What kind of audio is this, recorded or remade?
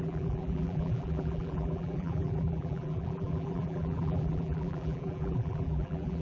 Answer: remade